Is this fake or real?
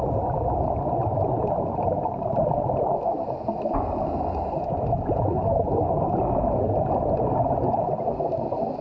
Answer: real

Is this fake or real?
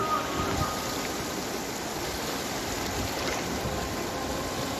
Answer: real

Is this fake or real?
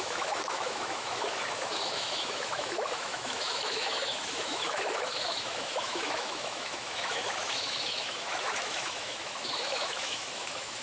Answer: fake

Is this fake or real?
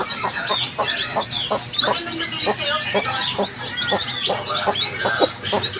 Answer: real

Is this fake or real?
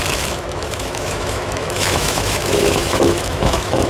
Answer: fake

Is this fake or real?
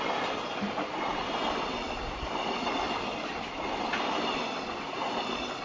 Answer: real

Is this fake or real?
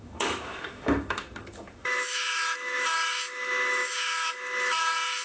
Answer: fake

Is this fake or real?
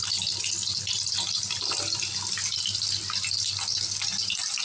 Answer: real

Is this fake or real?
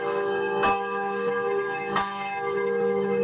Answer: fake